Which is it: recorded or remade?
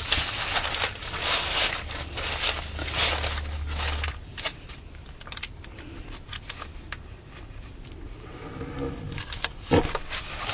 recorded